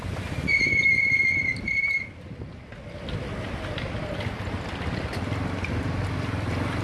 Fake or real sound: real